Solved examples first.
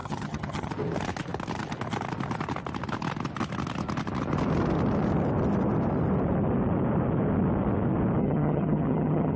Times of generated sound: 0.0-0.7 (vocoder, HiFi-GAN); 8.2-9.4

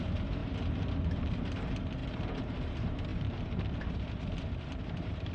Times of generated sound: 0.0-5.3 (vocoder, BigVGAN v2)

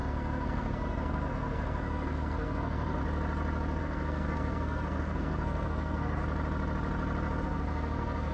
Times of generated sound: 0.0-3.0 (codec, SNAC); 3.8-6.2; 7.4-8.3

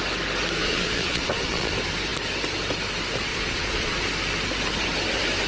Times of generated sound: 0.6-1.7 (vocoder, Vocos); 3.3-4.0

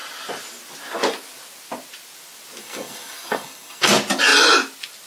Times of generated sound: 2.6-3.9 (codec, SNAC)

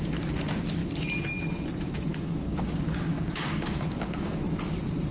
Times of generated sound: 2.1-4.3 (codec, DAC)

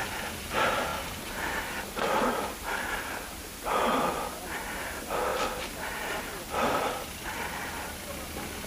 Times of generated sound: 0.9-3.6 (vocoder, BigVGAN v2); 5.3-7.8